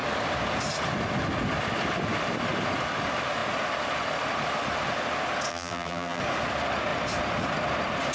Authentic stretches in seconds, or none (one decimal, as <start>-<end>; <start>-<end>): 0.0-5.5; 6.2-8.1